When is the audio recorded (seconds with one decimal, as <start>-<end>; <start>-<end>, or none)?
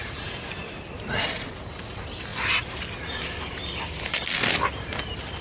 0.0-5.4